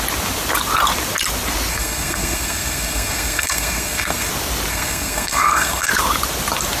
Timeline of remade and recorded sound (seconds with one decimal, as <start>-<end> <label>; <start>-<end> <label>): 0.0-1.7 recorded; 1.7-4.3 remade; 4.3-4.7 recorded; 4.7-5.9 remade; 5.9-6.8 recorded